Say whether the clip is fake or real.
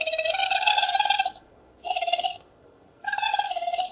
fake